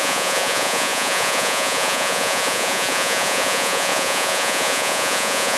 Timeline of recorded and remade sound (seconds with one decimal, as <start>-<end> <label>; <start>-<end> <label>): 0.0-5.6 remade